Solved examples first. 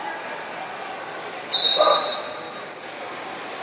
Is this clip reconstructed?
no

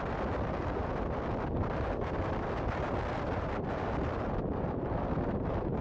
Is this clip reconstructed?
no